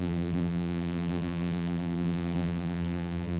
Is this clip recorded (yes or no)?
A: no